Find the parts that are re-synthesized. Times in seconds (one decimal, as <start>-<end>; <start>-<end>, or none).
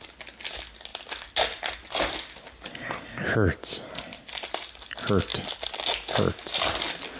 none